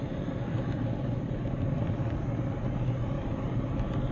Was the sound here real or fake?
real